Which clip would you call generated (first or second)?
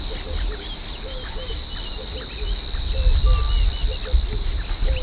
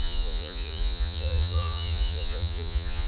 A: second